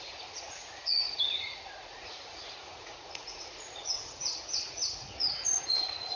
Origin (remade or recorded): remade